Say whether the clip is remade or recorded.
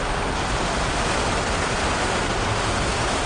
recorded